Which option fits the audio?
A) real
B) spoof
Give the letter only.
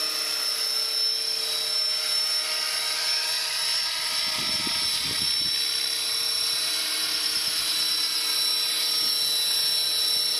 A